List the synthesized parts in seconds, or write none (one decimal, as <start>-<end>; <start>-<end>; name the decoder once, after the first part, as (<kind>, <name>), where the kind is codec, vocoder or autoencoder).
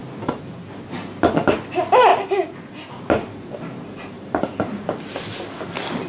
none